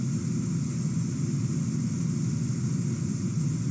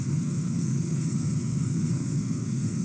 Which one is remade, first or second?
second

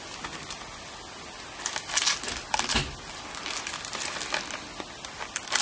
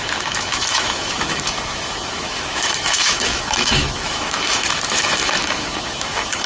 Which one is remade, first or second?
second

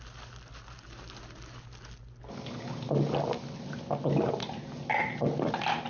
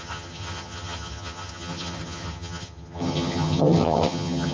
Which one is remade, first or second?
second